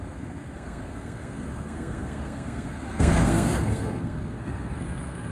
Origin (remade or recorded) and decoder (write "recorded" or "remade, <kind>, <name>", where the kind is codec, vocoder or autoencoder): remade, codec, SNAC